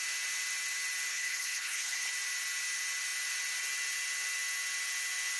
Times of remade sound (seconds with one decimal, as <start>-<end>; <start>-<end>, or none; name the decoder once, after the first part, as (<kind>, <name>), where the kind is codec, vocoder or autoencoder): 1.1-2.1 (codec, HILCodec)